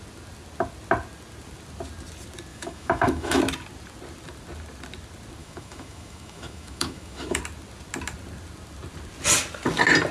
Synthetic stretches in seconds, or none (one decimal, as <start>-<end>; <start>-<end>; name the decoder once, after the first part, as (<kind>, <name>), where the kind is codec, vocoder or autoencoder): 2.5-3.4 (autoencoder, DAC-VAE); 5.4-7.4